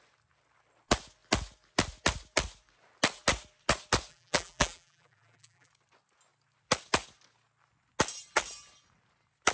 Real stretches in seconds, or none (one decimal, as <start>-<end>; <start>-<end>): 0.0-4.1; 5.7-9.5